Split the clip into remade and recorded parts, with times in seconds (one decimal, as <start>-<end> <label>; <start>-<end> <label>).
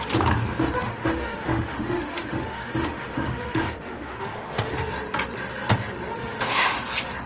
0.0-0.8 recorded; 0.8-4.7 remade; 4.7-6.1 recorded; 6.1-6.8 remade; 6.8-7.3 recorded